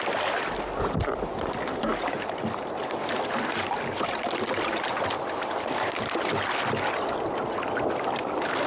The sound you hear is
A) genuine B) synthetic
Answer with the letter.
A